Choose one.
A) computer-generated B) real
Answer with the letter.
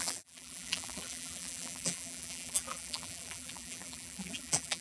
A